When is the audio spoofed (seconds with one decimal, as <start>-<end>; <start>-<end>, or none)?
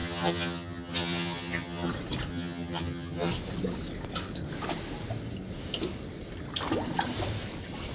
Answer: 0.0-1.9; 2.3-3.3